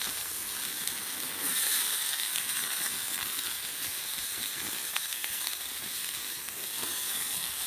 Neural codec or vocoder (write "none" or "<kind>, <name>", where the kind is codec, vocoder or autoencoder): codec, SNAC